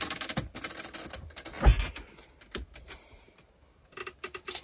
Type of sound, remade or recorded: recorded